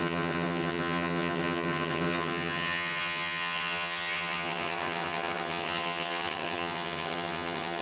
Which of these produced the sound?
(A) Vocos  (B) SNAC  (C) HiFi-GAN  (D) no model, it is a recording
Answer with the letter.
C